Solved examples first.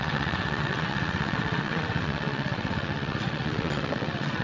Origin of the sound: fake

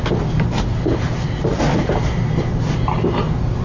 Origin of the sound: real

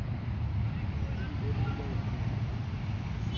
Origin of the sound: real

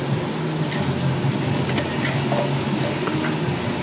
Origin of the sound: real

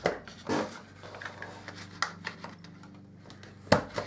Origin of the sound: real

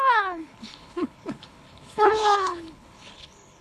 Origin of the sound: fake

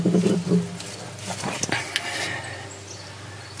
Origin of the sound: real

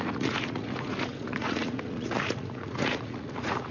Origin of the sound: fake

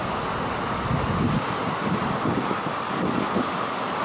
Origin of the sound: real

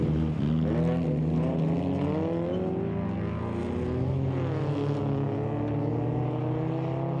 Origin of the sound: real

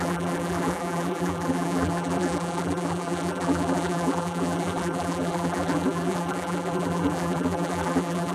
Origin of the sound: fake